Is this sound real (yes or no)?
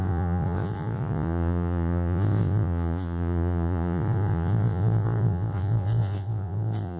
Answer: no